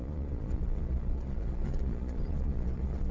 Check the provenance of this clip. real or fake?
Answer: fake